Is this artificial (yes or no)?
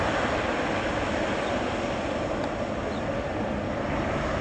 no